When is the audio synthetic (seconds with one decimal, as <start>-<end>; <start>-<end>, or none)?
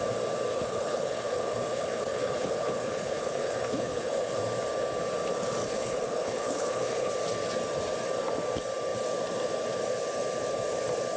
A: 0.5-4.4; 5.6-7.1